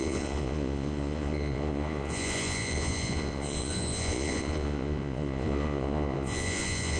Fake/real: fake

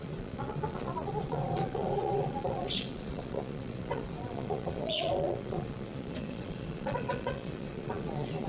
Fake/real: fake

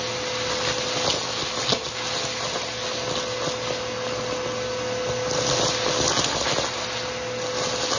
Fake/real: real